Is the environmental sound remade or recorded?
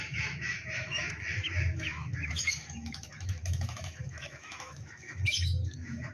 remade